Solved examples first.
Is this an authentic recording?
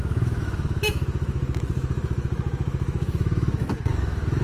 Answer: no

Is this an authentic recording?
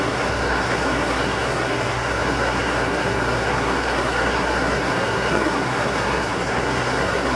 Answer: no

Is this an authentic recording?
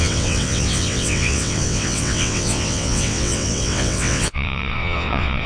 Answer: no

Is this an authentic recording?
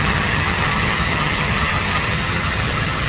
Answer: no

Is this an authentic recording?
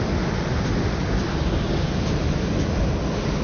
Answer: yes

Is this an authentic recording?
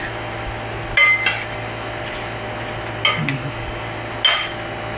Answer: yes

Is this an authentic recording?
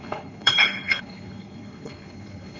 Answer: no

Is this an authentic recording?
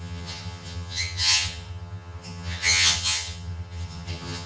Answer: no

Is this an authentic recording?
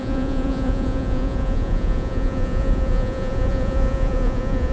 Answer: no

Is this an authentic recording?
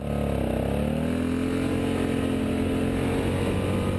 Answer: yes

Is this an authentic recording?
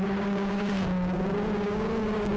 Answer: no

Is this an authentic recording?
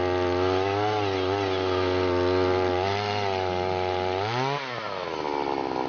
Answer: yes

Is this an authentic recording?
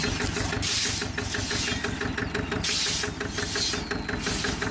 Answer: yes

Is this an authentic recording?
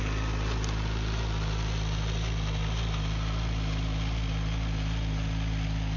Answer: yes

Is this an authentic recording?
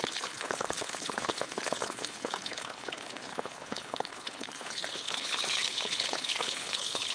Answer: no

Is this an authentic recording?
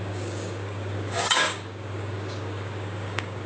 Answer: no